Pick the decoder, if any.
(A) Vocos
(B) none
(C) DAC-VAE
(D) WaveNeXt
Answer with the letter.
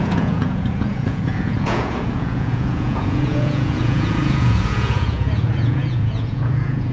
A